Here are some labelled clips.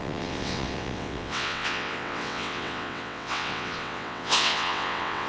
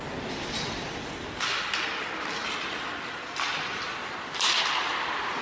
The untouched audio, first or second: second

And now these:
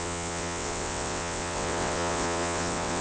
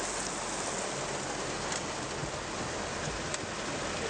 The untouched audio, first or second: second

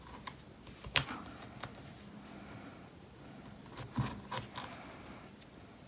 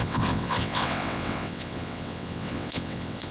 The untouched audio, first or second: first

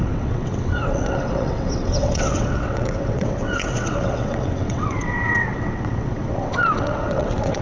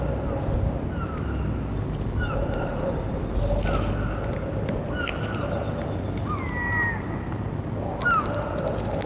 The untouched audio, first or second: second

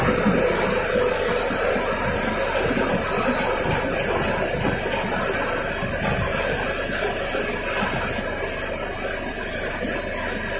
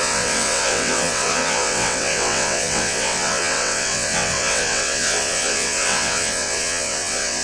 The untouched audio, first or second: first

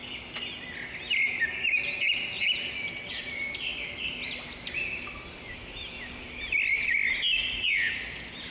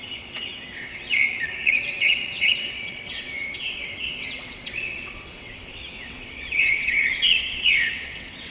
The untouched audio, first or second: first